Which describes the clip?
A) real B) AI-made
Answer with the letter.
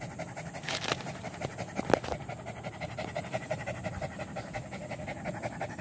A